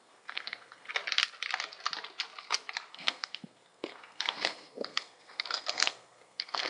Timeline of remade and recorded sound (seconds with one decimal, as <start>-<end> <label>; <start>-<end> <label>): 0.0-0.9 remade; 0.9-2.9 recorded; 2.9-6.7 remade